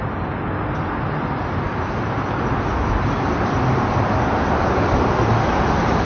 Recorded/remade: recorded